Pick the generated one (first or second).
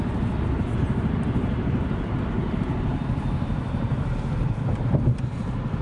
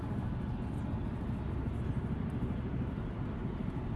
first